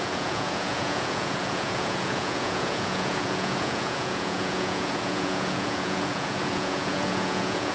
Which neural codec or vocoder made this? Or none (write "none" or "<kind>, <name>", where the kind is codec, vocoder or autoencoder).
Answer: vocoder, Vocos